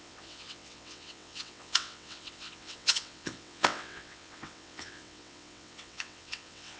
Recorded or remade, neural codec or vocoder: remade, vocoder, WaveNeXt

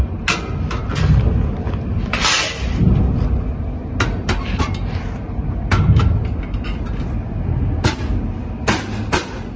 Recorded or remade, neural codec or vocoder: recorded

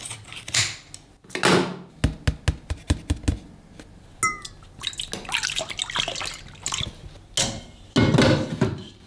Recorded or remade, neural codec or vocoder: recorded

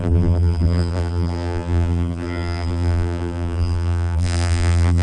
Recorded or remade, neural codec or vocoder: remade, vocoder, BigVGAN v2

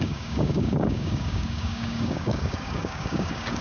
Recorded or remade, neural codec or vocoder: remade, codec, DAC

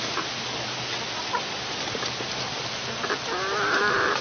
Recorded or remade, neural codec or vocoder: recorded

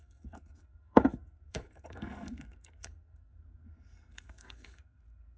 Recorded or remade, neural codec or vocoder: remade, codec, SNAC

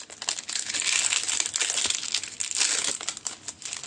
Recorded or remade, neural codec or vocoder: recorded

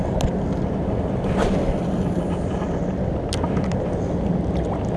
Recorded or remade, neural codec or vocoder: recorded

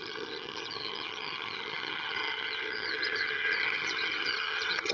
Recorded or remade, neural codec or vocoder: remade, vocoder, HiFi-GAN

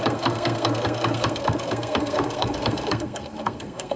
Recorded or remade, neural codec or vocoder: remade, codec, SNAC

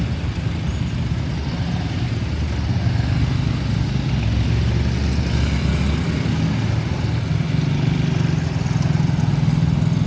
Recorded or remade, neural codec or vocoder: recorded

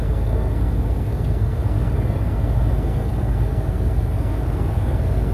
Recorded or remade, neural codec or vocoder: remade, codec, SNAC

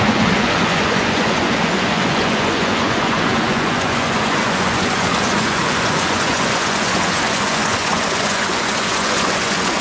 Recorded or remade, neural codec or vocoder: remade, vocoder, Vocos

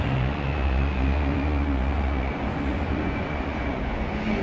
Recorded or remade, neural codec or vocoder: remade, vocoder, Vocos